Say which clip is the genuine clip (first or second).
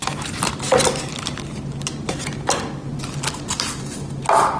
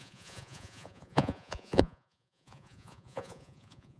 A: first